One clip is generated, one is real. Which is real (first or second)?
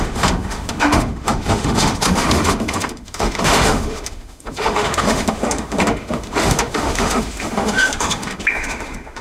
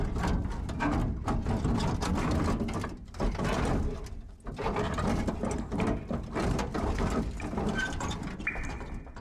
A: second